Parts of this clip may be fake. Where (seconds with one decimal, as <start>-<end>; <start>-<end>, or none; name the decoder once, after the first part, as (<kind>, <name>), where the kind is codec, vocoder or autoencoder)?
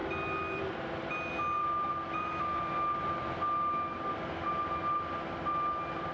none